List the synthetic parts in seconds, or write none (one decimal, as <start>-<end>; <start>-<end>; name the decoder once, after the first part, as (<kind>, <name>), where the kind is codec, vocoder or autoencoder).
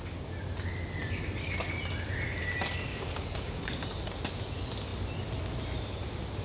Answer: 2.9-3.6 (codec, DAC)